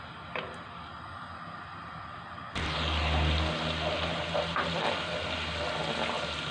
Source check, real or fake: real